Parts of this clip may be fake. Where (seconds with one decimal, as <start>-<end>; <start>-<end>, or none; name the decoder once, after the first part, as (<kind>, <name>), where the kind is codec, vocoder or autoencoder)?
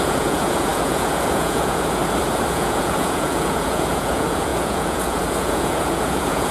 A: 0.0-2.0 (vocoder, Vocos); 2.5-6.5